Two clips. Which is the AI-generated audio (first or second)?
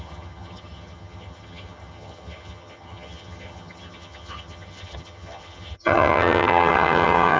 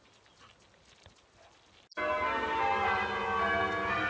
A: first